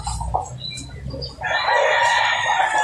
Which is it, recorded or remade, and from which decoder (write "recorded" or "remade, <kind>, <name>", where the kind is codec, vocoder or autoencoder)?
recorded